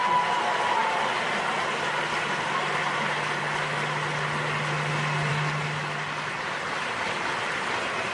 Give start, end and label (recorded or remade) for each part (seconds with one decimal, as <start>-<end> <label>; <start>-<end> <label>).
0.0-8.1 recorded